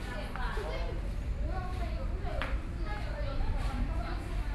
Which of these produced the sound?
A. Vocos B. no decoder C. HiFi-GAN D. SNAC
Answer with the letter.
B